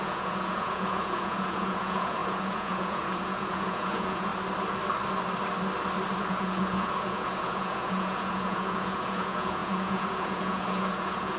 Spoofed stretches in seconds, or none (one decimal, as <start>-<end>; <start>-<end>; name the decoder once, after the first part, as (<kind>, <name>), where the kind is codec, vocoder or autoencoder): 0.0-4.3 (vocoder, Vocos); 6.3-11.4